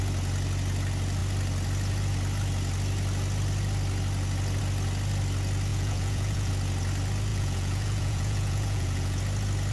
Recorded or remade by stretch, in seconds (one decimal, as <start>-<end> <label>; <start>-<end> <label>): 0.0-5.7 recorded; 5.7-6.5 remade; 6.5-7.3 recorded; 7.3-9.2 remade; 9.2-9.7 recorded